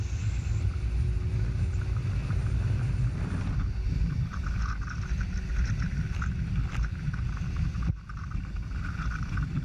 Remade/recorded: recorded